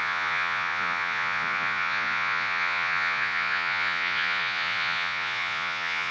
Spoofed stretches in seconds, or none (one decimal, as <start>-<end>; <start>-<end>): 0.0-6.1